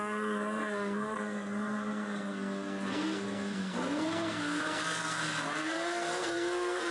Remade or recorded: remade